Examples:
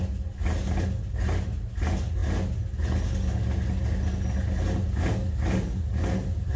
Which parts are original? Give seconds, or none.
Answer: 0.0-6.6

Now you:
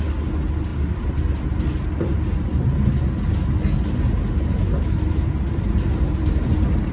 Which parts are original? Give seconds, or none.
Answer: 0.0-6.9

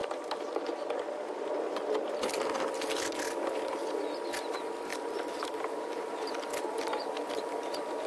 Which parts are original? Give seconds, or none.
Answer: 0.5-4.9; 7.4-8.1

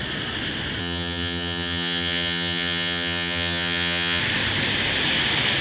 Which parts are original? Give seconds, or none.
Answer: 0.0-0.8; 4.2-5.6